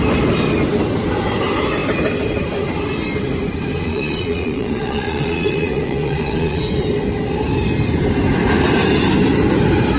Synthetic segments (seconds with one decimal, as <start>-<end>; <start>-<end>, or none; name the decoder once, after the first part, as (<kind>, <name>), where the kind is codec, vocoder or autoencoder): 3.8-6.6 (vocoder, Vocos)